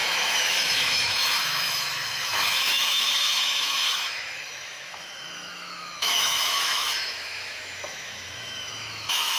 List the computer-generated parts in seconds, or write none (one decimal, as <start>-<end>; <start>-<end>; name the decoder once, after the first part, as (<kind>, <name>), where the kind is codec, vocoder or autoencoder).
0.0-9.4 (autoencoder, DAC-VAE)